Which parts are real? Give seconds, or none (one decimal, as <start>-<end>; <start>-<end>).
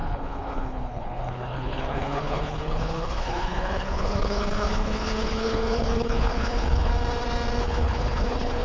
6.9-7.6